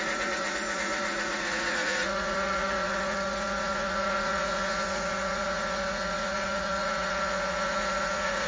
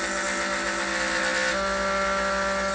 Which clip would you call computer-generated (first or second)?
first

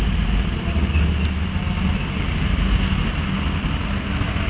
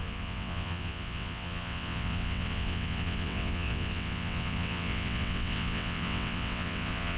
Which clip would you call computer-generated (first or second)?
second